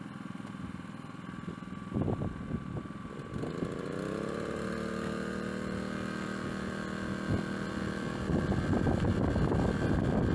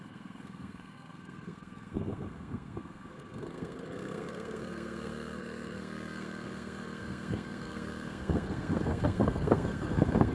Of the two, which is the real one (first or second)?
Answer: first